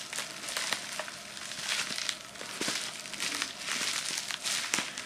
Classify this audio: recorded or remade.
recorded